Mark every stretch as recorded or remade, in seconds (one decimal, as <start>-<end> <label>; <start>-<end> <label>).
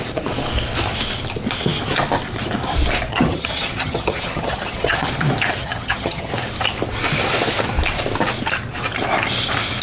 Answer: 0.0-3.1 recorded; 3.1-5.1 remade; 5.1-5.6 recorded; 5.6-6.3 remade; 6.3-9.8 recorded